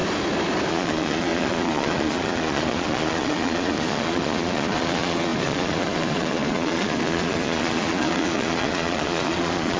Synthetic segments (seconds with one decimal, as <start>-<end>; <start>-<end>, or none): 0.7-9.8